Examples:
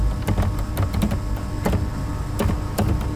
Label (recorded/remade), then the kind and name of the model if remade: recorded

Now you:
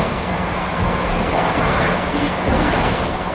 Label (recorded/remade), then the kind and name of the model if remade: remade, codec, SNAC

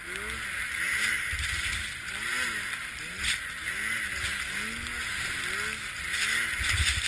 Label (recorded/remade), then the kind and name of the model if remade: recorded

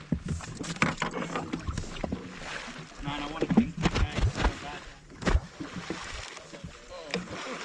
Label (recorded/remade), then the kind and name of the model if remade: recorded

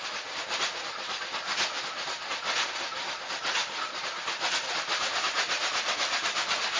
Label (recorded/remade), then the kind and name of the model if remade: recorded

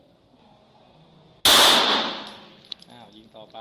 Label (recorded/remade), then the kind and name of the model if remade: recorded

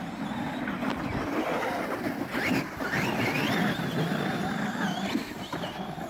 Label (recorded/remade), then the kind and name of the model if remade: recorded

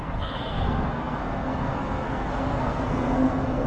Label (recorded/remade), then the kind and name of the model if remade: remade, codec, SNAC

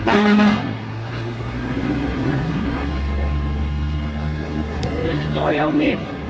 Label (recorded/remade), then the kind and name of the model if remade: remade, codec, SNAC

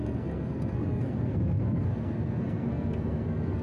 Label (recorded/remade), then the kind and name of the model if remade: remade, codec, SNAC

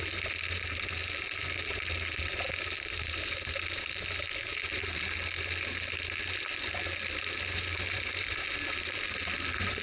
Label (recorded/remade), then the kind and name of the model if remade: recorded